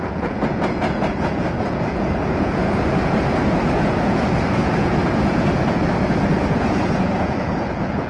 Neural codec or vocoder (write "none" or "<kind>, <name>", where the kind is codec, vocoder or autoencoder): vocoder, Vocos